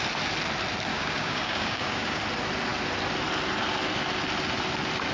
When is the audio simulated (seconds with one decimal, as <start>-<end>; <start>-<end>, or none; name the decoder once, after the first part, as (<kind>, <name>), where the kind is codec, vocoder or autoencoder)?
0.9-2.2 (codec, DAC)

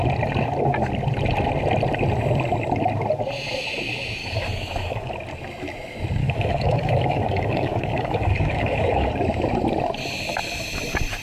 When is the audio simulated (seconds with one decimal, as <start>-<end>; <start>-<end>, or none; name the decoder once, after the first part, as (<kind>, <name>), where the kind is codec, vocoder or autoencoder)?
4.2-5.1 (codec, DAC); 6.2-9.1

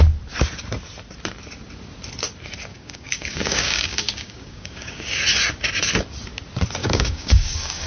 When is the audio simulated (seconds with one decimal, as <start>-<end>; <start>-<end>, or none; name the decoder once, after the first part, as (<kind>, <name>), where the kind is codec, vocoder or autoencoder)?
2.7-5.2 (codec, DAC); 6.8-7.9